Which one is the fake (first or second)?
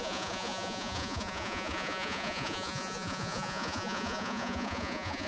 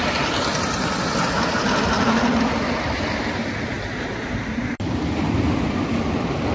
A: first